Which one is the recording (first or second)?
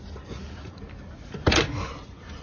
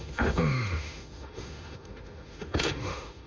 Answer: first